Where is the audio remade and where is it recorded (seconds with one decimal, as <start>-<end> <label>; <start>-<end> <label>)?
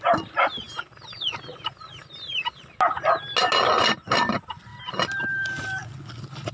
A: 0.0-6.5 recorded